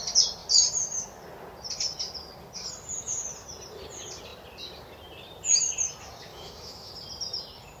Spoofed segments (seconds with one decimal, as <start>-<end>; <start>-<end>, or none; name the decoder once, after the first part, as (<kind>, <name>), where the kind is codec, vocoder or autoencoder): 6.3-6.9 (autoencoder, DAC-VAE)

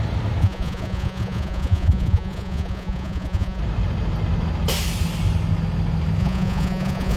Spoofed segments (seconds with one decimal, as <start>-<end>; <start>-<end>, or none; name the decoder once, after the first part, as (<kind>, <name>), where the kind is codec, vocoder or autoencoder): 0.4-3.6 (vocoder, Vocos); 6.2-7.2

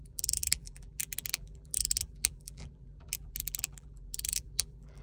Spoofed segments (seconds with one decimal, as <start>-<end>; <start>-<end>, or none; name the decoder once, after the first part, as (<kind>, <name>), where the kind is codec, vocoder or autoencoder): 0.0-5.0 (vocoder, BigVGAN v2)

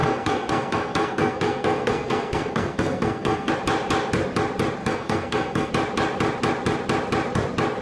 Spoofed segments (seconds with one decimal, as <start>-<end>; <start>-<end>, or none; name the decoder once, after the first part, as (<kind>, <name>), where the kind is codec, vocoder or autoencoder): 0.0-3.5 (codec, SNAC); 4.8-5.7